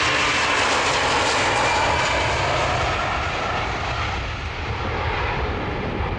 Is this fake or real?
real